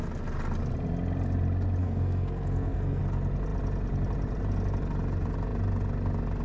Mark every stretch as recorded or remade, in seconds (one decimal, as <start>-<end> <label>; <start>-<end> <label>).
0.0-1.8 recorded; 1.8-3.0 remade; 3.0-6.4 recorded